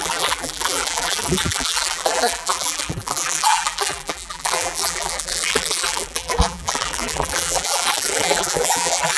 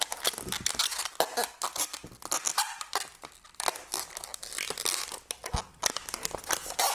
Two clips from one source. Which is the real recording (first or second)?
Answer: second